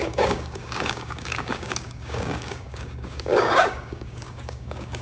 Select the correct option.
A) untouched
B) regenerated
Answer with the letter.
B